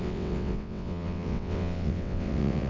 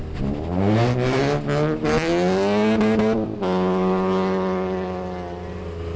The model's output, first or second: first